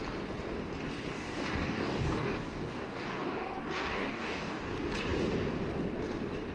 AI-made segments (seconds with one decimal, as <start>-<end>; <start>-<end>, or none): 1.1-4.6